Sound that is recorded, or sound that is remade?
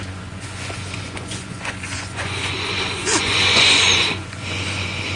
remade